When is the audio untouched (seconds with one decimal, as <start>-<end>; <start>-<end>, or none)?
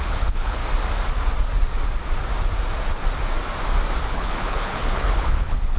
0.6-4.1